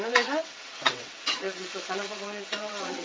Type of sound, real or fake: fake